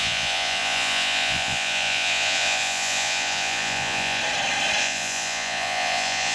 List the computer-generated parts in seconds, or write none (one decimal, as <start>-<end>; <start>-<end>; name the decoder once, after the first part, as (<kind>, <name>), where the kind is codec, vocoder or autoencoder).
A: 0.0-4.2 (vocoder, Vocos); 4.8-6.3